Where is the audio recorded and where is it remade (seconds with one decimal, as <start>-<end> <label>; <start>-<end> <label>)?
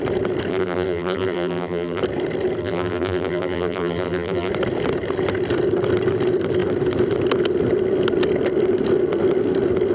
0.0-0.5 recorded; 0.5-2.0 remade; 2.0-2.6 recorded; 2.6-4.5 remade; 4.5-9.9 recorded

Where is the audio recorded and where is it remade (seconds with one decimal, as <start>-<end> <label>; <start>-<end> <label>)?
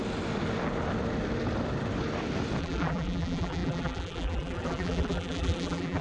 0.0-2.6 recorded; 2.6-6.0 remade